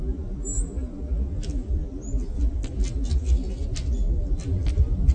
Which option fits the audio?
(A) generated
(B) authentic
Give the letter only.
B